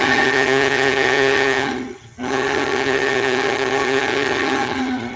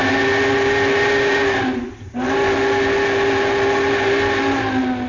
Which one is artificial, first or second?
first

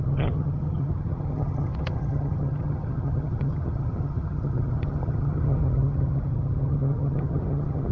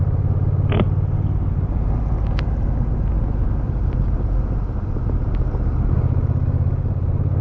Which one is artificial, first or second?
first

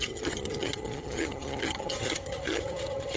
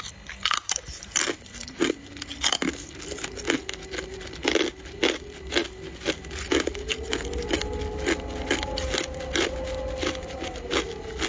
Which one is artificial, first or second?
first